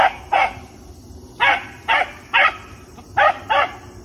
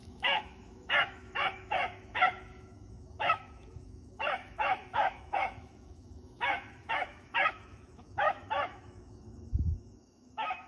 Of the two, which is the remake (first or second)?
second